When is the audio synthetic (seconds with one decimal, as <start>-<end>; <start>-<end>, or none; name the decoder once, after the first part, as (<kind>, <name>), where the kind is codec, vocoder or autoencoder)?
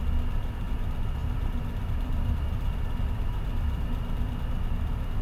1.2-4.3 (vocoder, BigVGAN v2)